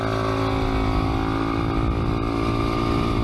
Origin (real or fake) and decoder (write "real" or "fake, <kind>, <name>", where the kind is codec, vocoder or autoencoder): real